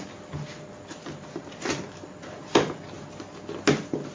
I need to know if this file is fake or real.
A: real